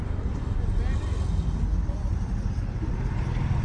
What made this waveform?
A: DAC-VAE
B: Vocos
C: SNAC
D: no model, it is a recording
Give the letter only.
D